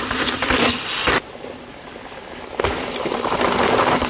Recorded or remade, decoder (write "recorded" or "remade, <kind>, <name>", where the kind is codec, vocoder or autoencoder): recorded